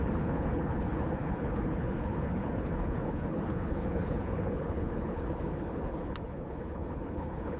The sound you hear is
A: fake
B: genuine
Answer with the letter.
A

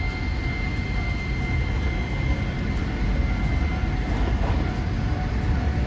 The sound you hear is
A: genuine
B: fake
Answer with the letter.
A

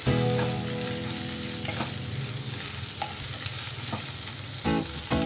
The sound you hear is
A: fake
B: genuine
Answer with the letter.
B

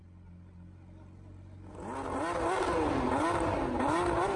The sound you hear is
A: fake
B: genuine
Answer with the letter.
B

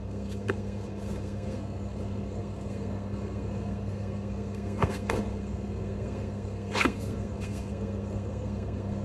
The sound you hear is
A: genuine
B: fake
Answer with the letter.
B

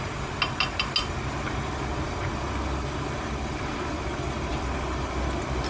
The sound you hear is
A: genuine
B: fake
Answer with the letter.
A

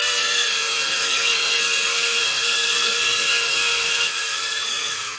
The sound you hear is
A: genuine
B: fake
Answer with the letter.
B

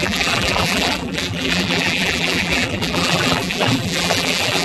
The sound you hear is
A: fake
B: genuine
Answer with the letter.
A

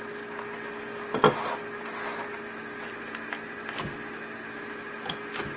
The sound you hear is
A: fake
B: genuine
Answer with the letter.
B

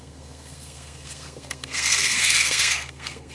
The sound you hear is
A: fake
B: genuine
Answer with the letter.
A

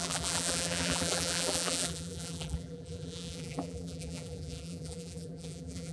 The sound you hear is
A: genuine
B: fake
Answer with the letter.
B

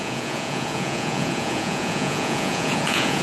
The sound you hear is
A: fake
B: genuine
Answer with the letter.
A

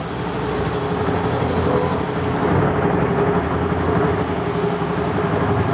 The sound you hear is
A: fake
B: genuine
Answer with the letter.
B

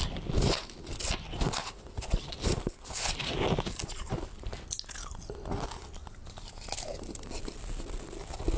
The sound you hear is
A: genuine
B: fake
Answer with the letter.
A